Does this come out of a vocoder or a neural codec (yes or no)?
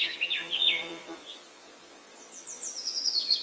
yes